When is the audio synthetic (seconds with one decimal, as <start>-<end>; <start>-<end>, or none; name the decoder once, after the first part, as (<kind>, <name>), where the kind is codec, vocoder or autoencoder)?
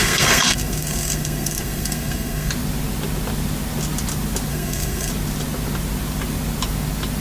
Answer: 0.0-2.5 (codec, SNAC); 4.5-5.1